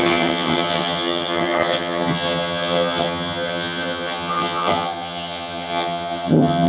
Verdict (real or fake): fake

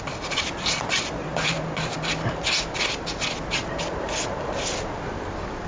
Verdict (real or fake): real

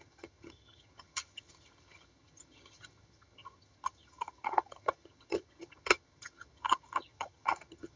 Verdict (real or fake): fake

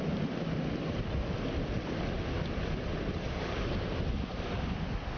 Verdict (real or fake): real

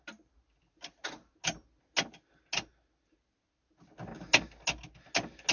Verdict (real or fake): real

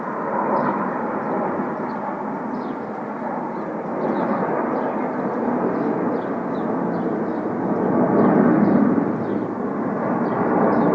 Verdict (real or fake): real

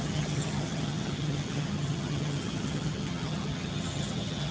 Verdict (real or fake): fake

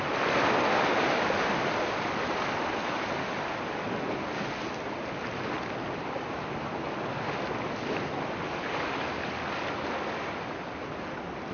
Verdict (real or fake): real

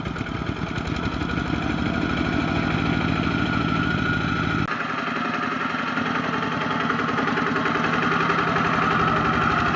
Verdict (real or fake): real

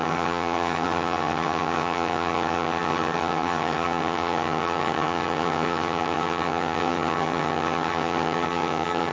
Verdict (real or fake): fake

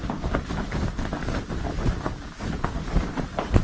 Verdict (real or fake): real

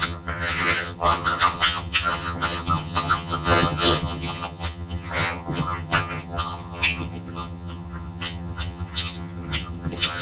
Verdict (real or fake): fake